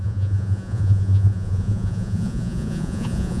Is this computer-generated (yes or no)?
yes